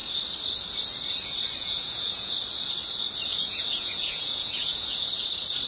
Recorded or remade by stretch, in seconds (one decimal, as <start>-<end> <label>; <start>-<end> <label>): 0.0-1.6 recorded; 1.6-2.3 remade; 2.3-3.3 recorded; 3.3-5.1 remade; 5.1-5.7 recorded